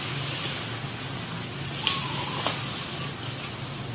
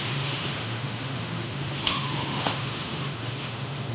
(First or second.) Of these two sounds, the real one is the first